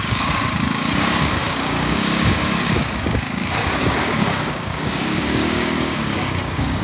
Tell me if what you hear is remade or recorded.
remade